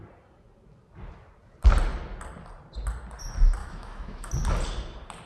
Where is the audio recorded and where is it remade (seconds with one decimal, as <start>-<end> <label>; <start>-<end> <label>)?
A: 0.0-3.6 recorded; 3.6-4.3 remade; 4.3-5.3 recorded